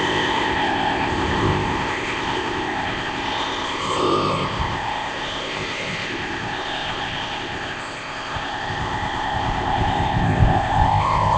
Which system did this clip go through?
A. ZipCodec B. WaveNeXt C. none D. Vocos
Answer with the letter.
A